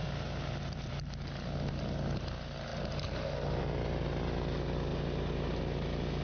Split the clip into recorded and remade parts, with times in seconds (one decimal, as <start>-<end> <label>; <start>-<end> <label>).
0.0-1.0 remade; 1.0-2.7 recorded; 2.7-3.6 remade; 3.6-4.9 recorded; 4.9-5.6 remade; 5.6-6.2 recorded